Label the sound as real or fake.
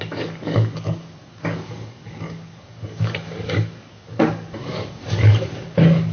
fake